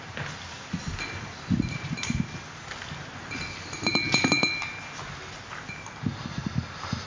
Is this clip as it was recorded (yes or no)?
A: yes